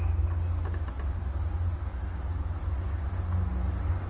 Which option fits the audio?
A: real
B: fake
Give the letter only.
A